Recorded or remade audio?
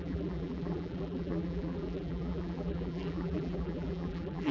remade